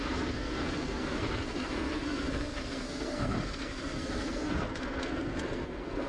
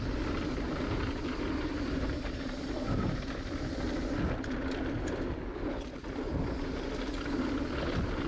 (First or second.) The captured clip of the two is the second